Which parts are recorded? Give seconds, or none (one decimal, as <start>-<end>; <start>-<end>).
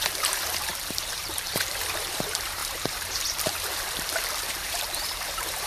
none